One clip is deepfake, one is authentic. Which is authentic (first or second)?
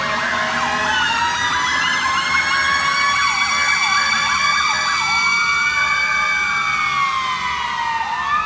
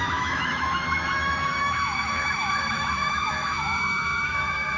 first